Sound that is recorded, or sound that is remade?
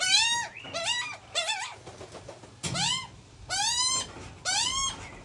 recorded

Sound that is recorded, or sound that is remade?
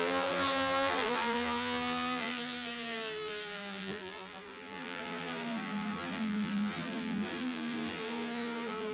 remade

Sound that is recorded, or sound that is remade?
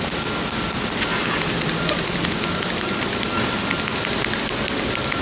recorded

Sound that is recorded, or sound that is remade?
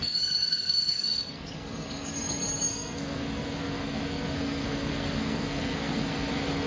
remade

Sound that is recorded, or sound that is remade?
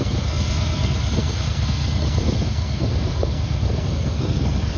remade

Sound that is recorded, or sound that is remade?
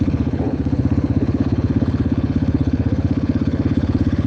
remade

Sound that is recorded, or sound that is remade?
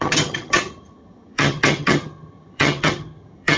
remade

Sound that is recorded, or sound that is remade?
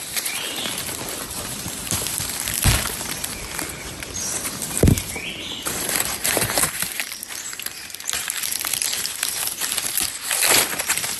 remade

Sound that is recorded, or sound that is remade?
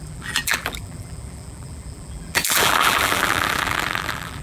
remade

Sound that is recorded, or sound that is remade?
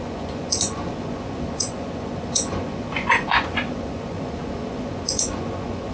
remade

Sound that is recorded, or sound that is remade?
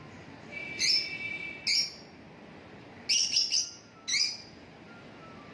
recorded